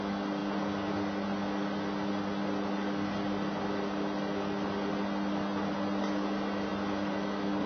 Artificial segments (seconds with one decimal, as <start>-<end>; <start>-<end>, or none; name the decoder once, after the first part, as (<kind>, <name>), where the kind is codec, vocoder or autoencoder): none